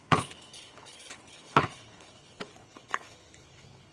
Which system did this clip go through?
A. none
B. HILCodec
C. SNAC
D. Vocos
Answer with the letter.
B